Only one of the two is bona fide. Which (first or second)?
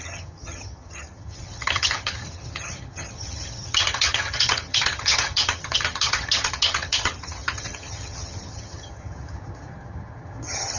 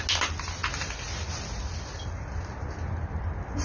second